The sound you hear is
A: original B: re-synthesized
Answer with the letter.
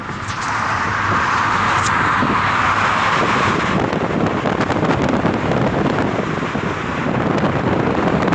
A